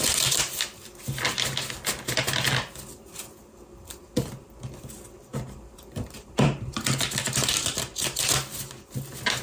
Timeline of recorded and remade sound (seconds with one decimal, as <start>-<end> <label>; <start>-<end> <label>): 0.0-5.3 recorded; 5.3-6.8 remade; 6.8-9.4 recorded